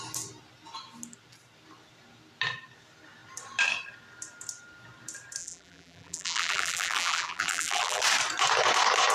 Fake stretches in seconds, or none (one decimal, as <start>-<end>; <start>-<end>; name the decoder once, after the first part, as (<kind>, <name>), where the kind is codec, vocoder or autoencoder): 5.4-8.0 (vocoder, BigVGAN v2)